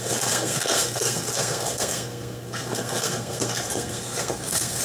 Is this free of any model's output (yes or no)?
no